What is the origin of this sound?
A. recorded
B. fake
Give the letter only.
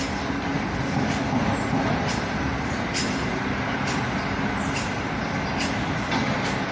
A